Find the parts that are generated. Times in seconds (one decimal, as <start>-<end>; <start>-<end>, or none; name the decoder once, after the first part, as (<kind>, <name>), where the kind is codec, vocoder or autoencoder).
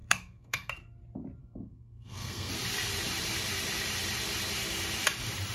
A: 0.0-0.7 (codec, SNAC); 1.4-2.5